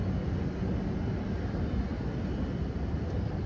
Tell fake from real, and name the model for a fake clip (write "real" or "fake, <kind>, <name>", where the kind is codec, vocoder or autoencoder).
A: real